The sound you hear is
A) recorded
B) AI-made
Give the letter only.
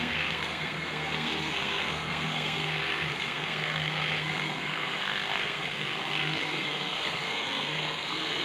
B